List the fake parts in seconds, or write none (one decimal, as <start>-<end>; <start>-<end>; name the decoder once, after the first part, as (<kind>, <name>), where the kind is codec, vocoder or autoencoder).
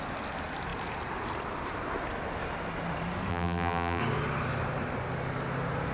3.3-4.0 (vocoder, BigVGAN v2)